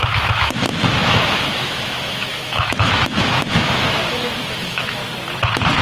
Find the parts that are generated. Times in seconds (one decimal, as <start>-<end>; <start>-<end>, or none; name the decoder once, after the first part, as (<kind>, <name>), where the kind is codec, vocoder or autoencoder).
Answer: 0.0-5.0 (autoencoder, DAC-VAE)